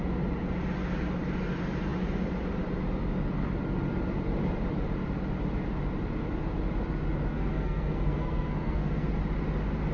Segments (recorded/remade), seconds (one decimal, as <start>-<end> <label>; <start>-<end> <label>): 0.0-7.3 recorded; 7.3-9.1 remade; 9.1-9.9 recorded